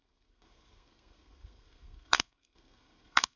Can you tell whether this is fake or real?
fake